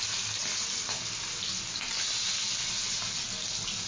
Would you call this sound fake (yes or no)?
no